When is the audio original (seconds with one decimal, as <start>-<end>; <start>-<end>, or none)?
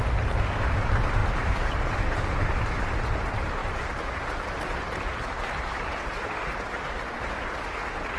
0.0-1.2; 2.5-3.6; 6.1-8.2